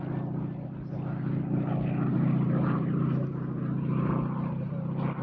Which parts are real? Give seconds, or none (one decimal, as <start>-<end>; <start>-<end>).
0.0-2.1; 4.7-5.2